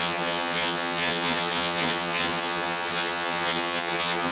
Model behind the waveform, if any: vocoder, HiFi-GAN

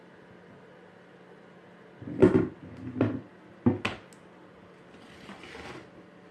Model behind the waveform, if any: none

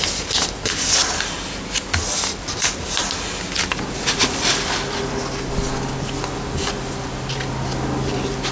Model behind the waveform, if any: none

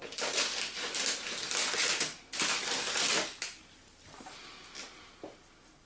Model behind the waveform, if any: none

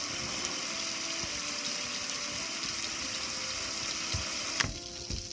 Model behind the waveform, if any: none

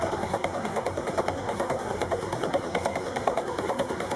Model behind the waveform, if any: codec, SNAC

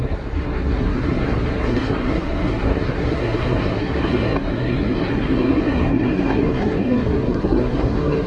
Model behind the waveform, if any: codec, SNAC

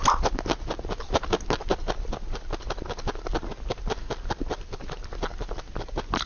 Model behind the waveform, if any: none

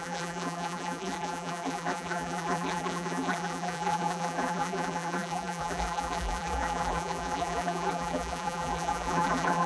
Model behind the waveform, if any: vocoder, BigVGAN v2